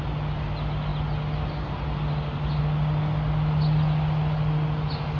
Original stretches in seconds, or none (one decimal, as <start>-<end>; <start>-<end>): 0.0-5.2